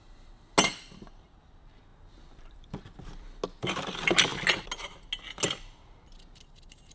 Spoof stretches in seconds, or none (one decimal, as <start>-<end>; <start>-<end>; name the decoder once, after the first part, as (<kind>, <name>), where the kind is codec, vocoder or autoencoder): 1.9-2.8 (vocoder, BigVGAN v2)